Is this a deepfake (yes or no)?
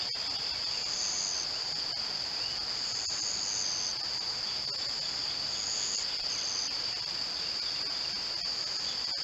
no